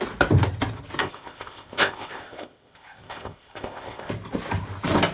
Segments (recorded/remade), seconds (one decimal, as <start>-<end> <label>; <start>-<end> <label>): 0.0-1.0 recorded; 1.0-4.1 remade; 4.1-5.1 recorded